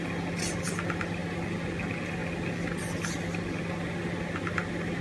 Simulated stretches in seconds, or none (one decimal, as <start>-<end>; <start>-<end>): none